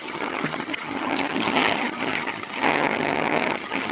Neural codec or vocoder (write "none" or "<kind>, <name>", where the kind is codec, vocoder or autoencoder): vocoder, HiFi-GAN